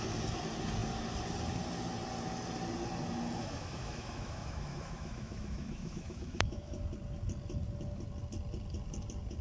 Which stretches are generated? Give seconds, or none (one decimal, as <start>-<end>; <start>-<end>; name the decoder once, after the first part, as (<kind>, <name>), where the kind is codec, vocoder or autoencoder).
3.4-6.8 (autoencoder, DAC-VAE)